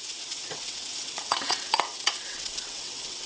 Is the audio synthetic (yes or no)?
yes